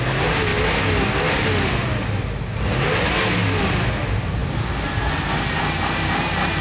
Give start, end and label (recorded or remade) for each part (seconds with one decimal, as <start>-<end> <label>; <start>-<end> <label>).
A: 0.0-6.6 recorded